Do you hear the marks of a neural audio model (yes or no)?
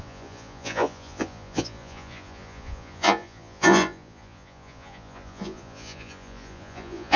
yes